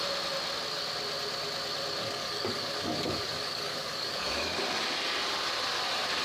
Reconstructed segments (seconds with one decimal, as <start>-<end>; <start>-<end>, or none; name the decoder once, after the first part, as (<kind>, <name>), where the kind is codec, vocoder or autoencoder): 2.0-4.6 (codec, DAC)